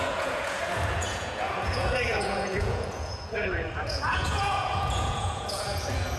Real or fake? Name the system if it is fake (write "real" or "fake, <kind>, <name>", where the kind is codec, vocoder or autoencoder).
fake, vocoder, Vocos